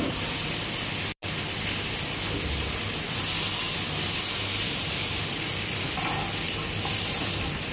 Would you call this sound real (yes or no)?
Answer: yes